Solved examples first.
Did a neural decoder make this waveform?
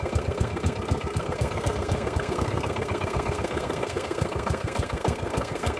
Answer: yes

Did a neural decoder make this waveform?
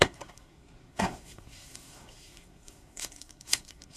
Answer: yes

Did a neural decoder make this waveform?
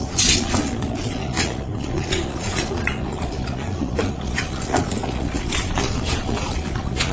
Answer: yes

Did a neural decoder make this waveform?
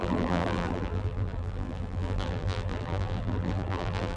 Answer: yes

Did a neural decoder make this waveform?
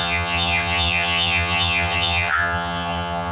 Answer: yes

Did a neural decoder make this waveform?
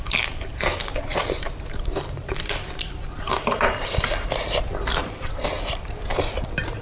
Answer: yes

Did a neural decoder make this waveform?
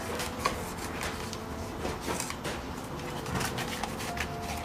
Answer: no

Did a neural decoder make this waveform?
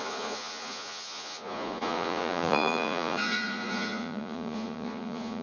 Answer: yes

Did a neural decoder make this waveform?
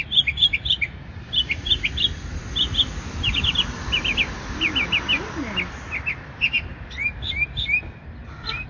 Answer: no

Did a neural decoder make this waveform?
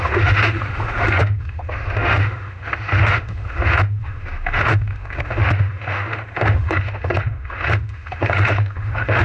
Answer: yes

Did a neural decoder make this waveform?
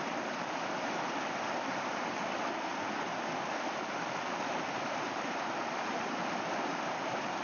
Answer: no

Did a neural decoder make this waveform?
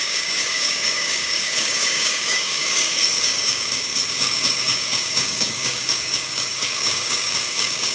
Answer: yes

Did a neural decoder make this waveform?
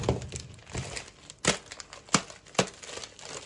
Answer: no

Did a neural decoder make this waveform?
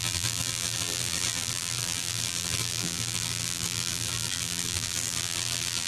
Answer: yes